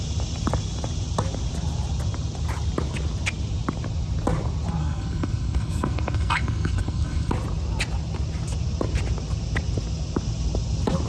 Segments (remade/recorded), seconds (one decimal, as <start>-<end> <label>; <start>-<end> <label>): 0.0-4.8 recorded; 4.8-7.3 remade; 7.3-11.1 recorded